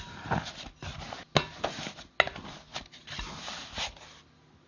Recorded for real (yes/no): yes